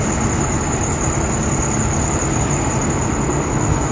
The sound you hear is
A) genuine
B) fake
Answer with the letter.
A